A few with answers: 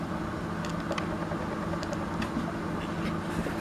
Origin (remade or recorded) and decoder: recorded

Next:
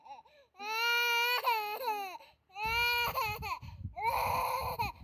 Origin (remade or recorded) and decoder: recorded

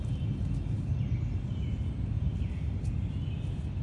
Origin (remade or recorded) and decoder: recorded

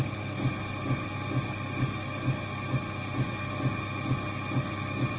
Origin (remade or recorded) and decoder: recorded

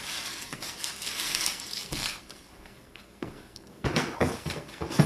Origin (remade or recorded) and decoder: remade, codec, SNAC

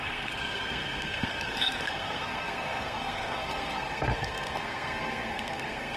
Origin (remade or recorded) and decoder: remade, codec, SNAC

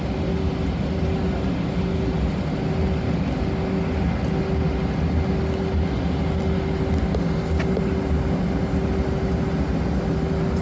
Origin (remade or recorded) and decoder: recorded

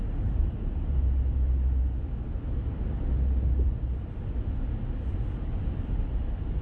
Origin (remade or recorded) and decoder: recorded